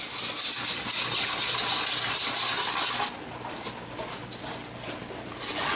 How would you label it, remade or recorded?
recorded